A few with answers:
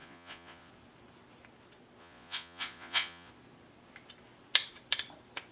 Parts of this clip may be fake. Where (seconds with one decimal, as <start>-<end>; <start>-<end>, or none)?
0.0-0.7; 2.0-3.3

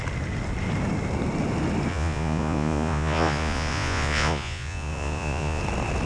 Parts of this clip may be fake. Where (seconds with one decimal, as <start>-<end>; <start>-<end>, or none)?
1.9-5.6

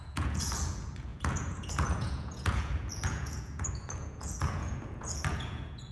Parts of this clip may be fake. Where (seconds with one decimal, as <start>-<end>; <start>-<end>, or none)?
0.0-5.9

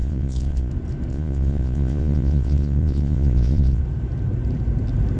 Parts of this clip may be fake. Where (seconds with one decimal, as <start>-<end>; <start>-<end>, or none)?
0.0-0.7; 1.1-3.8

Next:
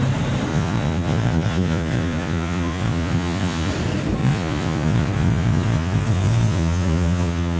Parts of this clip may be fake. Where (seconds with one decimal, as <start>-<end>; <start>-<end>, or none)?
0.5-3.7; 4.2-7.6

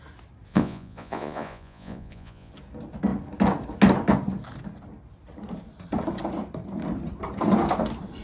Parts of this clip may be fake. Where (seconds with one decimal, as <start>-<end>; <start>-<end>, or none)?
0.5-2.5

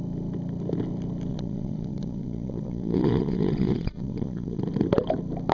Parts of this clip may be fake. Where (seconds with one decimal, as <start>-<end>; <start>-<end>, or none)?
1.3-4.6